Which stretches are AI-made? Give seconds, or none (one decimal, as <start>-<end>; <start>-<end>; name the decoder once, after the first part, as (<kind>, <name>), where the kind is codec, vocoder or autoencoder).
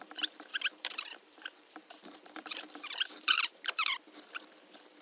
0.0-3.9 (vocoder, BigVGAN v2)